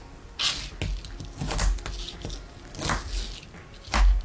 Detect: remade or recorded recorded